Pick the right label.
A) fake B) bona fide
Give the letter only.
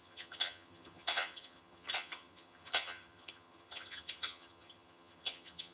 A